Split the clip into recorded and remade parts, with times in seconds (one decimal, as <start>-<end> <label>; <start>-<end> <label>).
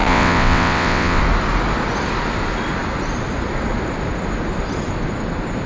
0.0-1.2 remade; 1.2-5.7 recorded